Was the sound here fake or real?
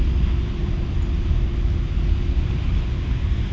real